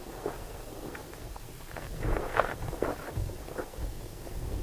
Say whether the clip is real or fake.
fake